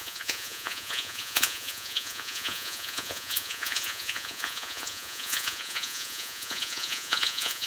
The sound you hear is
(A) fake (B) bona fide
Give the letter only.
A